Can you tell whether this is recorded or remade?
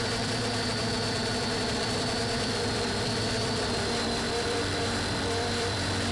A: remade